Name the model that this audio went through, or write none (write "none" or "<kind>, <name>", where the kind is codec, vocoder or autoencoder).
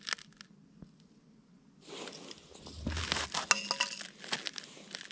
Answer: none